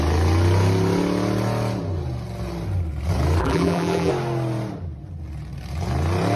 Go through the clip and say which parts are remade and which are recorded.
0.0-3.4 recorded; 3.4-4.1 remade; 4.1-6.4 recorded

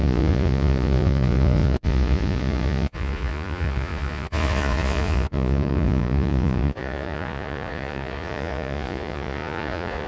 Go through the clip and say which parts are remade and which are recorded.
0.0-10.1 remade

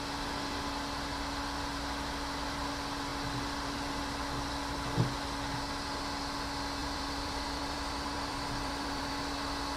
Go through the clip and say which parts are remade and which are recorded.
0.0-6.8 recorded; 6.8-9.1 remade; 9.1-9.8 recorded

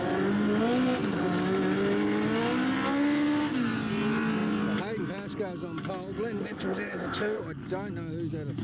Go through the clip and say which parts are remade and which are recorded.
0.0-6.4 recorded; 6.4-7.4 remade; 7.4-8.6 recorded

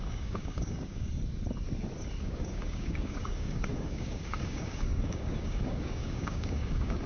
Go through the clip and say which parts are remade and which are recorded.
0.0-1.1 remade; 1.1-2.2 recorded; 2.2-7.1 remade

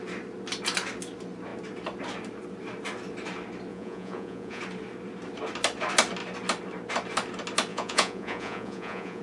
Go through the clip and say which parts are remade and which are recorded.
0.0-3.7 recorded; 3.7-4.6 remade; 4.6-7.7 recorded; 7.7-9.2 remade